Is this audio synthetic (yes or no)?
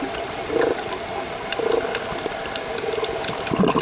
no